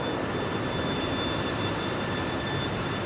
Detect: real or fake fake